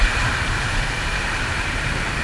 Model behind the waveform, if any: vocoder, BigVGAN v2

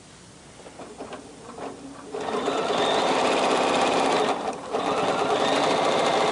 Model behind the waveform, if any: none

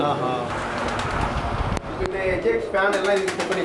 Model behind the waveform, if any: none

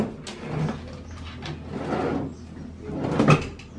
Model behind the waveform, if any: none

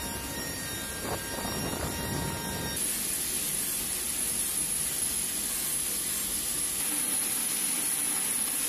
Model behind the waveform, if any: none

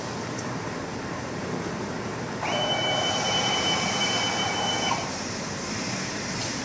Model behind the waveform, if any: vocoder, BigVGAN v2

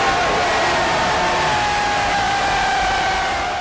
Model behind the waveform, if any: none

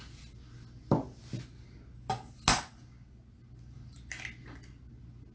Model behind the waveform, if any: none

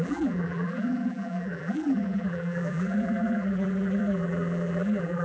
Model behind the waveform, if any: vocoder, BigVGAN v2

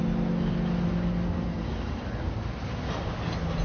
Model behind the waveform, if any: none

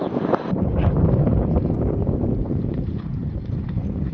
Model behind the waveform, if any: vocoder, BigVGAN v2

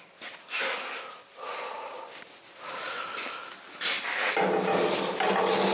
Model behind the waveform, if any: none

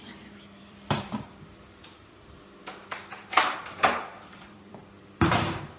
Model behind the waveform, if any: vocoder, BigVGAN v2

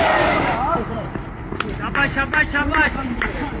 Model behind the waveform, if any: vocoder, BigVGAN v2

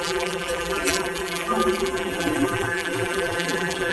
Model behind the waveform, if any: vocoder, BigVGAN v2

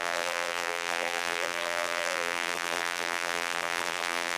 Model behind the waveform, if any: vocoder, BigVGAN v2